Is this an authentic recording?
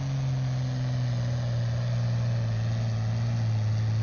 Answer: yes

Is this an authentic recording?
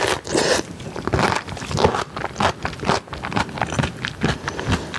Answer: yes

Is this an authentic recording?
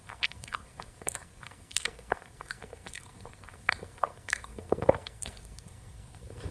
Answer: no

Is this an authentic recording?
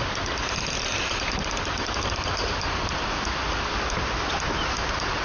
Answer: yes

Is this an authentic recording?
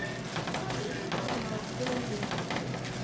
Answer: yes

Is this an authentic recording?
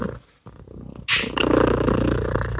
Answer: yes